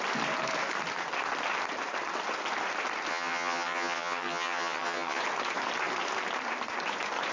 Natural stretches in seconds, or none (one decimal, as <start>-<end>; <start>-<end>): 0.0-3.1; 5.2-7.3